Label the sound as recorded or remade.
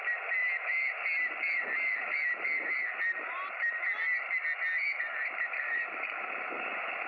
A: remade